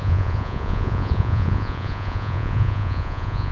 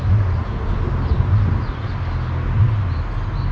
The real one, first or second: second